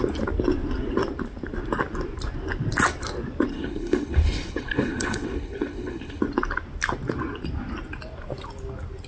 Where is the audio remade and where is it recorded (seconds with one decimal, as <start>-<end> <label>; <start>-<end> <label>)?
0.0-3.5 recorded; 3.5-6.2 remade; 6.2-9.1 recorded